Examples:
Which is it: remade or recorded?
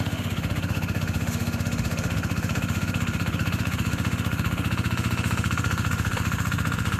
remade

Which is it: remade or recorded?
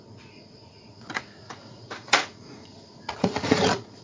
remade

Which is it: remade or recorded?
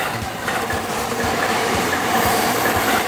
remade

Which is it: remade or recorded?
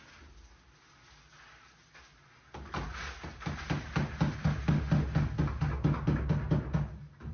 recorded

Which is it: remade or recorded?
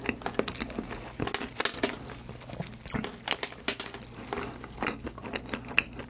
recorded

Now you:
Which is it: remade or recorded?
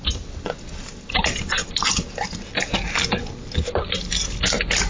recorded